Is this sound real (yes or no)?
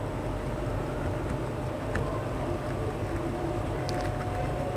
yes